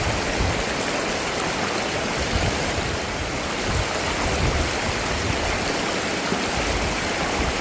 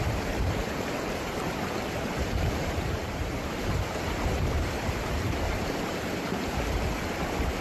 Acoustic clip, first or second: first